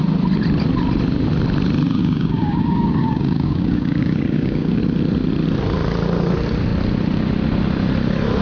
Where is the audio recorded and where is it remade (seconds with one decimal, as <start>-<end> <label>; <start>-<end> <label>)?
0.0-2.0 recorded; 2.0-4.8 remade; 4.8-8.4 recorded